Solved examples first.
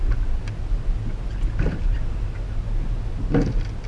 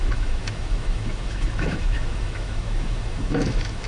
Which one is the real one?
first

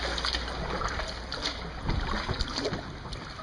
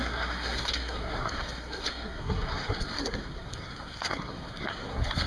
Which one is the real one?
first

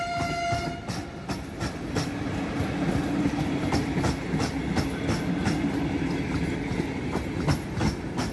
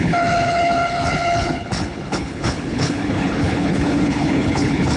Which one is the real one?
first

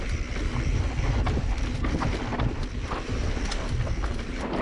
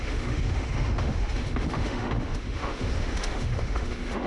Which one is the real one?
first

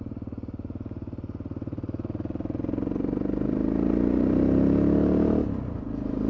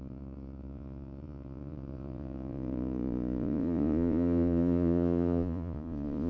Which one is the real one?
first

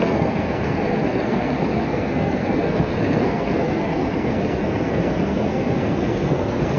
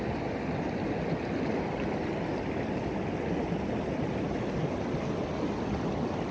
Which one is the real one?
second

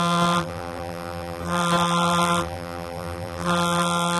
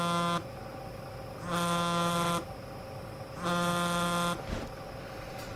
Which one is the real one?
second